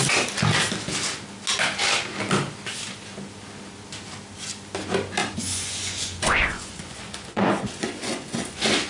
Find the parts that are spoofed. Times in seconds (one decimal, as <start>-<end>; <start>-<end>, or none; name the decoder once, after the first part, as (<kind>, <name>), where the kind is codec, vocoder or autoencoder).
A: 5.2-8.9 (vocoder, Vocos)